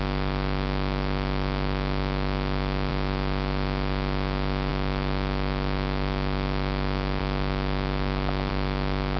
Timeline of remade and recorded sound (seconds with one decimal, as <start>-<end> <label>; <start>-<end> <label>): 0.0-2.9 remade; 2.9-4.7 recorded; 4.7-9.2 remade